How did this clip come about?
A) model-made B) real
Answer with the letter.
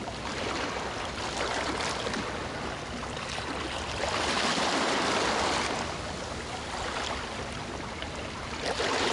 B